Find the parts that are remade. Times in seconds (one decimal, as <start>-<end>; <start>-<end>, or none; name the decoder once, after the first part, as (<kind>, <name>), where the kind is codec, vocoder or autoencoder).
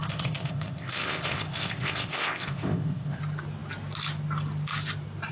0.0-3.2 (codec, ZipCodec)